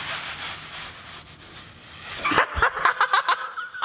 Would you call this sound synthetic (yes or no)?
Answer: no